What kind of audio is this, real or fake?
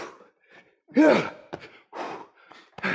fake